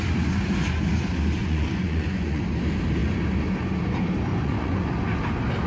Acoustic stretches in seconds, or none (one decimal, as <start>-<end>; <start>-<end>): 0.0-1.4; 2.4-4.3; 4.9-5.7